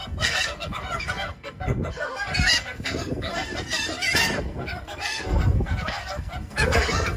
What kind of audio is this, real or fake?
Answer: fake